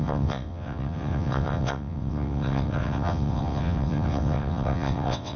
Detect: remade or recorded remade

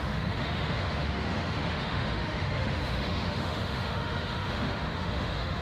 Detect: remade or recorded remade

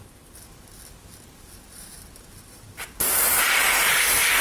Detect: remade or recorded recorded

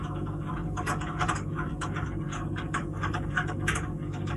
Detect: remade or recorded remade